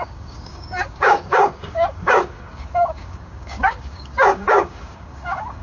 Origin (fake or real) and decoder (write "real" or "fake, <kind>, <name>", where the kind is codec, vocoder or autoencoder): fake, codec, DAC